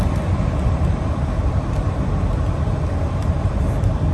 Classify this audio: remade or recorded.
remade